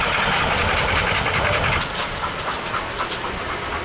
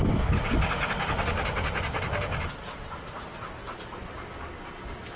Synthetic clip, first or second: first